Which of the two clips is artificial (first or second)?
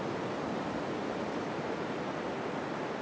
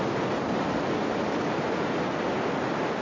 first